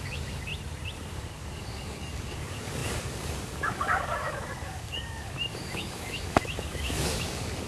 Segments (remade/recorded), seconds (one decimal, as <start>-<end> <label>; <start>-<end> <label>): 0.0-0.5 remade; 0.5-1.1 recorded; 1.1-7.7 remade